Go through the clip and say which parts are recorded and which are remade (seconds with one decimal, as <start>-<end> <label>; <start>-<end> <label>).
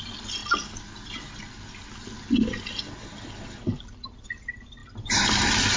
0.0-5.8 recorded